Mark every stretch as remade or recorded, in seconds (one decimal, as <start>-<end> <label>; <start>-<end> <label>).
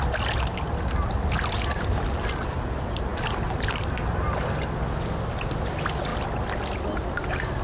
0.0-7.6 recorded